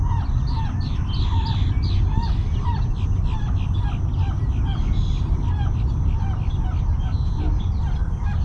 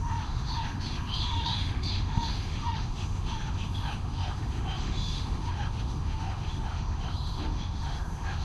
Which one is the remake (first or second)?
second